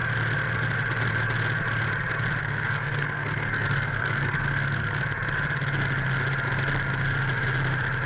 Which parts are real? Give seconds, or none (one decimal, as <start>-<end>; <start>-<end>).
0.0-2.4; 5.0-8.1